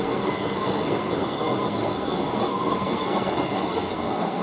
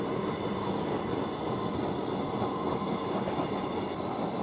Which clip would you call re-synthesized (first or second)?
first